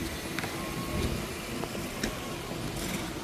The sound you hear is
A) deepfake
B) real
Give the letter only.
B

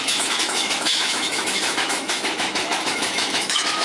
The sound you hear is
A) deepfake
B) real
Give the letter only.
A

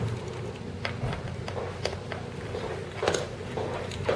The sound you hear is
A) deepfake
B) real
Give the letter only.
A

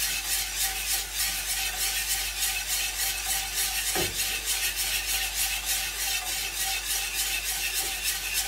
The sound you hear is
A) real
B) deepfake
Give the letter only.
A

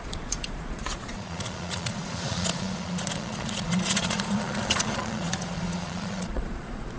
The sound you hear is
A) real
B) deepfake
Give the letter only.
B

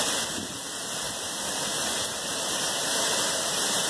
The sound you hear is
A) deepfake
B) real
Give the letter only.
B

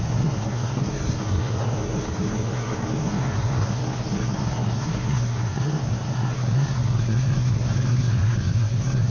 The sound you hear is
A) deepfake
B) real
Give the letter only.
A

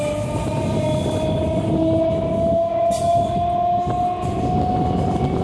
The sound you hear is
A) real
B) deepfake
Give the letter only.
A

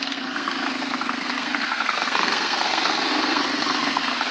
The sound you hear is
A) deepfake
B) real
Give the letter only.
A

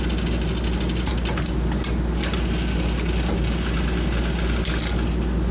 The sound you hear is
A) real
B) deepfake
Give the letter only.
A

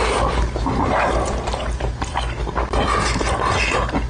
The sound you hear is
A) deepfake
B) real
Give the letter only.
B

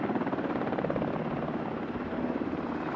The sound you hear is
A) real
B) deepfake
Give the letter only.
A